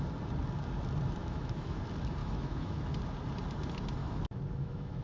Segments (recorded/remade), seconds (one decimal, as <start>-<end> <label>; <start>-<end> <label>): 0.0-1.2 recorded; 1.2-1.8 remade; 1.8-2.2 recorded; 2.2-3.0 remade; 3.0-4.0 recorded; 4.0-5.0 remade

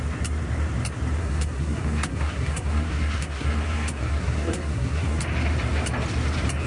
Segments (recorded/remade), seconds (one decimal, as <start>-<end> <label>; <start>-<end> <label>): 0.0-1.2 recorded; 1.2-5.2 remade; 5.2-6.7 recorded

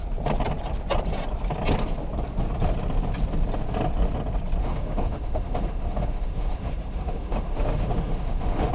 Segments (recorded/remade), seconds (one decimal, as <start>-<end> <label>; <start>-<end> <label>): 0.0-4.6 recorded; 4.6-8.7 remade

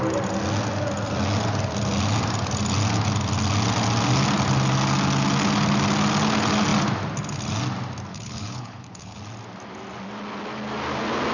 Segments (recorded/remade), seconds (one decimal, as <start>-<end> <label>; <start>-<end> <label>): 0.0-8.1 recorded; 8.1-9.2 remade; 9.2-11.3 recorded

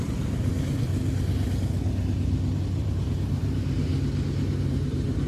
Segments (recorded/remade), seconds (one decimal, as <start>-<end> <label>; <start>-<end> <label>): 0.0-0.9 remade; 0.9-2.6 recorded; 2.6-3.9 remade; 3.9-4.7 recorded; 4.7-5.3 remade